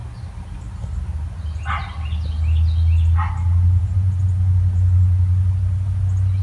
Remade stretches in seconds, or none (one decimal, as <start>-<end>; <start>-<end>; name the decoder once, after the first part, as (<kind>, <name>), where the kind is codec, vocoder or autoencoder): none